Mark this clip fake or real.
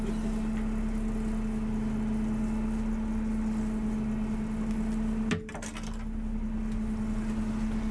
real